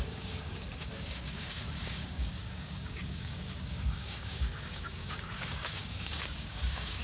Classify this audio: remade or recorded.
remade